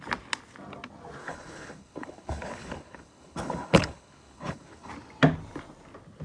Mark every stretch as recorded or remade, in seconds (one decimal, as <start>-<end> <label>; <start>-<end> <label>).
0.0-1.2 recorded; 1.2-4.9 remade; 4.9-6.2 recorded